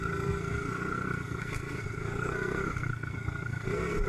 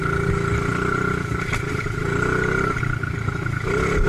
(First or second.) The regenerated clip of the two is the first